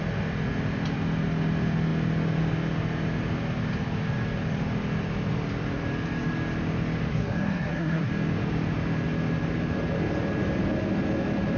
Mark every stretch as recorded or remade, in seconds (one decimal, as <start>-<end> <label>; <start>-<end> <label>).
0.0-7.1 recorded; 7.1-8.1 remade; 8.1-11.6 recorded